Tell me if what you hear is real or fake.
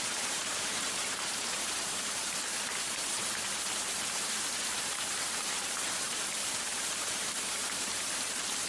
fake